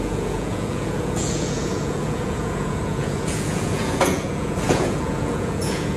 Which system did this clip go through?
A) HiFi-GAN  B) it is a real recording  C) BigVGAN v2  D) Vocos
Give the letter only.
D